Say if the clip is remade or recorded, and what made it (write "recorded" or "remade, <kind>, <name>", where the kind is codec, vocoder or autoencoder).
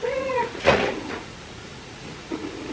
remade, vocoder, Vocos